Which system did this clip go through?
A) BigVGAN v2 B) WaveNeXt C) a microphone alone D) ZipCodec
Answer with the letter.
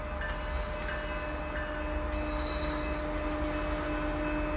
C